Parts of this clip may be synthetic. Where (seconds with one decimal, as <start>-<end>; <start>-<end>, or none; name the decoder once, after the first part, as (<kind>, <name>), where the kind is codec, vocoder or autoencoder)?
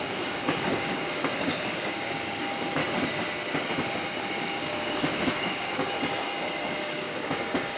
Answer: 0.0-2.8 (codec, DAC); 4.2-7.8